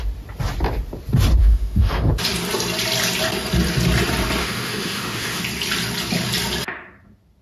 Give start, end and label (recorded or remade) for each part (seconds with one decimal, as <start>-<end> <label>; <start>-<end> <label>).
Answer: 0.0-1.4 recorded; 1.4-2.1 remade; 2.1-4.4 recorded; 4.4-5.4 remade; 5.4-7.4 recorded